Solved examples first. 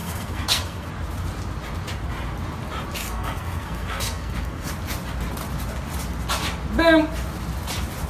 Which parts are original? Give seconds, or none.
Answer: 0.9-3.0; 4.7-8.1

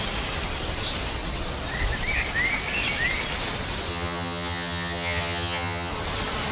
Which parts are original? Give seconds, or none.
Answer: 0.0-3.9; 5.9-6.5

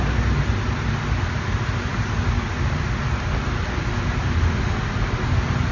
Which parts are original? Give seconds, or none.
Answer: 0.0-5.7

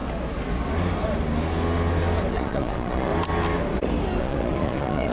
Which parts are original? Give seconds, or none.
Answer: 0.0-2.3; 3.1-4.2

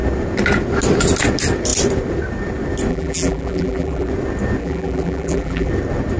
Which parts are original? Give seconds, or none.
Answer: 0.0-2.9; 4.1-4.6; 5.7-6.2

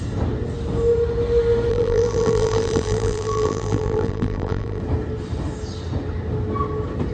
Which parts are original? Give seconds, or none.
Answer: 0.0-1.7; 4.8-7.1

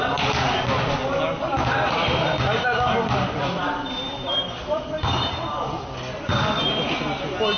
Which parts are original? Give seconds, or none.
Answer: 0.0-7.6

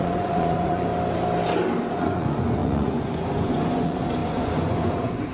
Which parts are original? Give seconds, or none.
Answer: 0.9-1.9